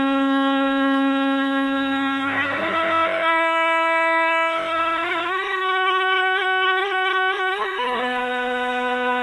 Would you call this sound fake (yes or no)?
yes